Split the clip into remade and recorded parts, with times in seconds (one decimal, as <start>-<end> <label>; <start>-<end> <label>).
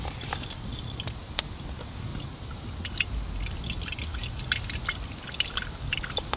0.0-2.1 recorded; 2.1-2.7 remade; 2.7-6.4 recorded